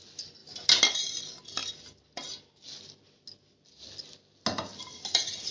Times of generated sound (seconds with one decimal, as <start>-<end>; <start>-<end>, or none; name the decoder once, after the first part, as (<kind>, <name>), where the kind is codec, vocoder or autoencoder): none